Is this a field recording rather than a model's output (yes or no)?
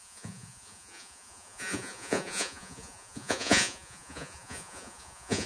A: no